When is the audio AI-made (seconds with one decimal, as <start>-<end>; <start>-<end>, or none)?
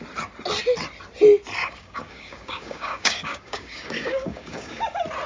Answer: 1.6-4.8